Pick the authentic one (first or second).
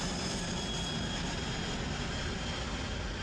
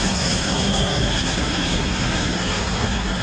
first